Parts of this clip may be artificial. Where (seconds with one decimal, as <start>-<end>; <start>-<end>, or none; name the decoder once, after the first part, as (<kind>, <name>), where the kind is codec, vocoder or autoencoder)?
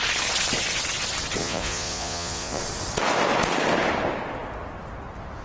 1.4-2.6 (vocoder, Vocos)